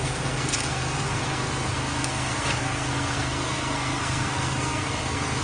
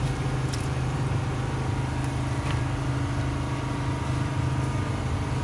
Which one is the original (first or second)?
second